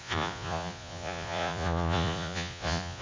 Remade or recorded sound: remade